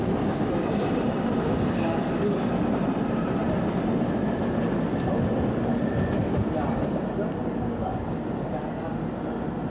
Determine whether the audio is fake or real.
real